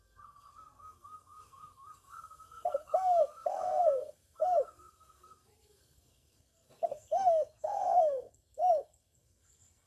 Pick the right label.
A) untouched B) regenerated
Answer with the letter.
B